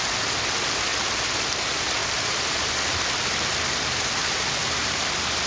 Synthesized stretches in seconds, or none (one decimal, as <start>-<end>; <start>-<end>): 0.9-1.5; 2.0-2.7; 4.2-5.0